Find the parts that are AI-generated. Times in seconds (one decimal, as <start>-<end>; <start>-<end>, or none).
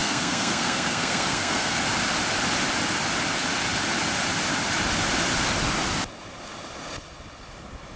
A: 0.0-1.8